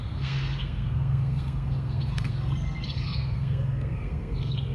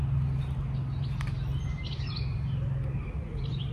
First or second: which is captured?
second